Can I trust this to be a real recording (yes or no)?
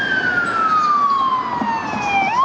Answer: yes